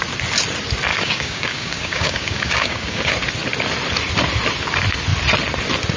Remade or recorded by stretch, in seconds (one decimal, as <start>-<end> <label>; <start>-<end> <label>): 0.0-0.9 recorded; 0.9-3.1 remade; 3.1-6.0 recorded